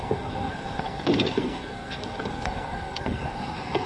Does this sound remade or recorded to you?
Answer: remade